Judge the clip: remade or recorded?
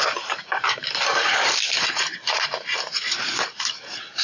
remade